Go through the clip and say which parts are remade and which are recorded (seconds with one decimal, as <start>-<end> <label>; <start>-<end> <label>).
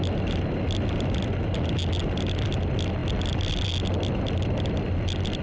0.0-5.4 recorded